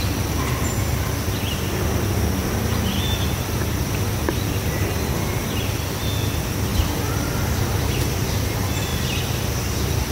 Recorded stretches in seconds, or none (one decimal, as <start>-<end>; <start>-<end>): 0.0-10.1